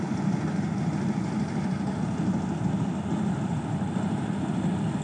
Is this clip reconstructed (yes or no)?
no